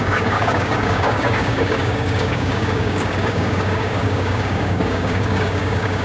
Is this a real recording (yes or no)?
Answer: no